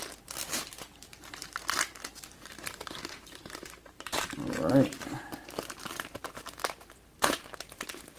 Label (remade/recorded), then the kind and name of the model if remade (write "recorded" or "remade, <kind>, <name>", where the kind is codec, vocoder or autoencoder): remade, vocoder, BigVGAN v2